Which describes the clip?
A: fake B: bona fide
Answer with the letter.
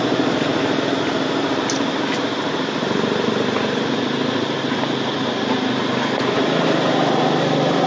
B